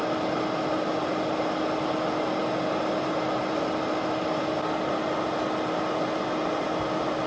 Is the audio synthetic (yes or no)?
no